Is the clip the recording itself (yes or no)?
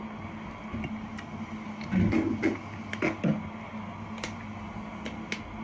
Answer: yes